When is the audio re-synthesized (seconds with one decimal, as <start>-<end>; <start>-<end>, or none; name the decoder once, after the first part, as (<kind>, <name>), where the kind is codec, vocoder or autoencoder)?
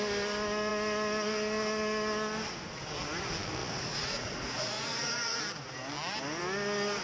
3.6-5.4 (vocoder, Vocos)